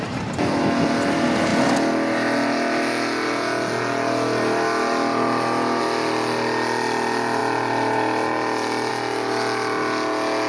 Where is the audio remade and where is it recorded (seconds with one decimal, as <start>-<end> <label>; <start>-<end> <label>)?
0.0-10.5 recorded

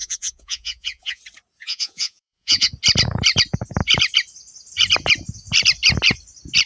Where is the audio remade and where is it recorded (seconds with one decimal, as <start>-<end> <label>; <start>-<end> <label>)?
0.0-1.2 remade; 1.2-1.6 recorded; 1.6-2.7 remade; 2.7-6.7 recorded